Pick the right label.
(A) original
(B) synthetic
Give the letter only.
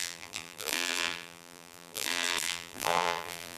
B